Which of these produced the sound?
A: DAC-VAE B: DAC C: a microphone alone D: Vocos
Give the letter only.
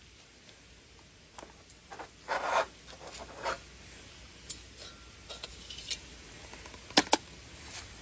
C